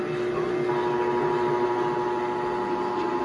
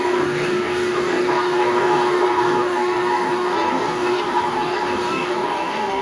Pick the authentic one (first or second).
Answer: first